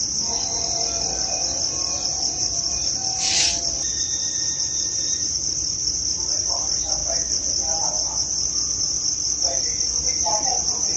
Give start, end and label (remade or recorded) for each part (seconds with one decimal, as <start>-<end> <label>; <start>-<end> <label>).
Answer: 0.0-2.1 recorded; 2.1-6.6 remade; 6.6-11.0 recorded